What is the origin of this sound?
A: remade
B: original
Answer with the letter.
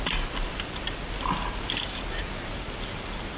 B